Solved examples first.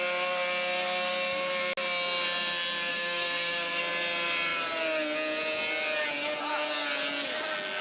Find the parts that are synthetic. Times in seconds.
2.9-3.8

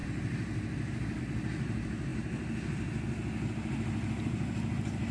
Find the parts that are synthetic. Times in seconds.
none

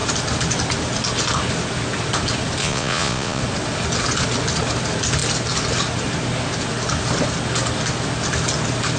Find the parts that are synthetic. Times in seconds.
2.6-3.4

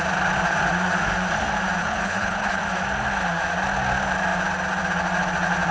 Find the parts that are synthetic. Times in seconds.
1.8-2.6